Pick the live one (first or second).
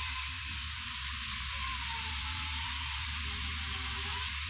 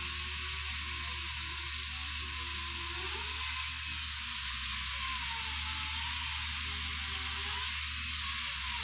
second